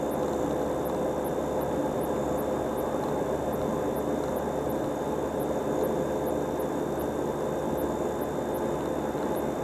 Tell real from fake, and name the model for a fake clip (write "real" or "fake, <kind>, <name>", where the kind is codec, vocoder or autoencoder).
real